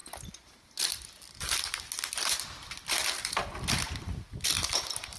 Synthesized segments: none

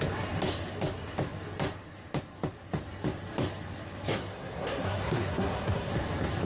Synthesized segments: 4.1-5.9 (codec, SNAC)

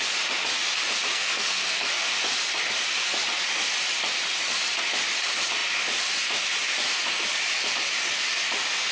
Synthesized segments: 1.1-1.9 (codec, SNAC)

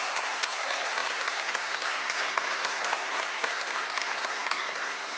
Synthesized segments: 0.0-5.2 (codec, SNAC)

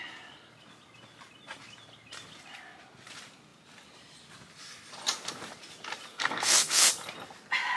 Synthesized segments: 6.1-6.9 (codec, SNAC)

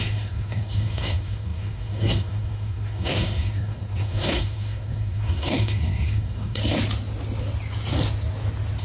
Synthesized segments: 0.0-6.6 (codec, SNAC)

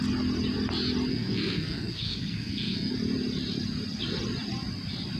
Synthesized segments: 1.1-2.9 (codec, SNAC)